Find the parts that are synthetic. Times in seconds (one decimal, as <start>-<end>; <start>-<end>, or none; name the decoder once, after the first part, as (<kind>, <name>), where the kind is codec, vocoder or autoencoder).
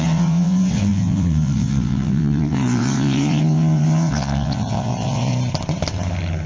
0.0-5.3 (vocoder, WaveNeXt)